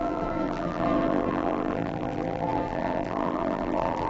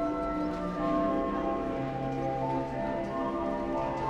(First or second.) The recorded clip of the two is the second